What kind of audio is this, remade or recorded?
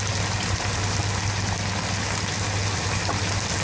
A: recorded